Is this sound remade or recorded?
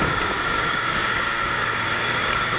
remade